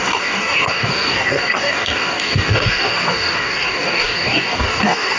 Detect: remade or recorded remade